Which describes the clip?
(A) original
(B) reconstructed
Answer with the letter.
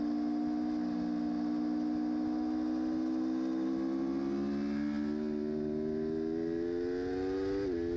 A